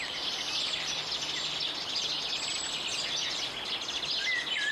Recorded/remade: recorded